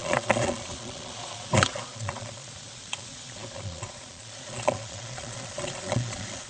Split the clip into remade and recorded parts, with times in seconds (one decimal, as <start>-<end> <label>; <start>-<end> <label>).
0.0-6.5 remade